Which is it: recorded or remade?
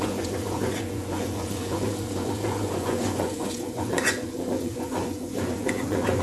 remade